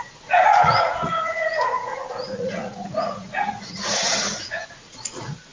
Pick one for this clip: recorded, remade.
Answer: remade